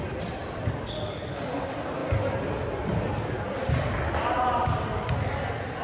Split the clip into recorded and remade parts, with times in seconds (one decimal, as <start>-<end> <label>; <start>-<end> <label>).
0.0-5.8 recorded